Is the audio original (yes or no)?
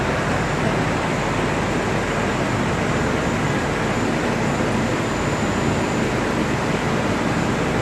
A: yes